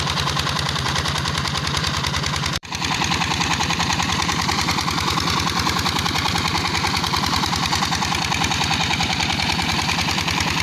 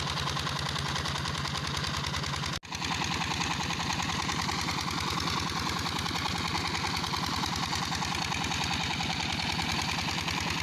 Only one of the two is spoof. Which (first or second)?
first